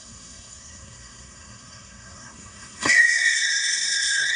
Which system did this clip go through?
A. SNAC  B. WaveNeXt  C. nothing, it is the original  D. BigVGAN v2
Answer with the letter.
A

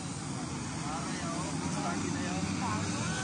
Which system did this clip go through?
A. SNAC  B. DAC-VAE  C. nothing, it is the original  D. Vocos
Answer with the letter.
C